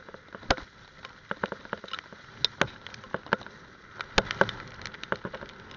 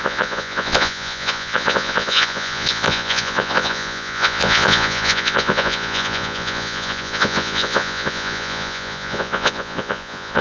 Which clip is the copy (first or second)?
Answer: second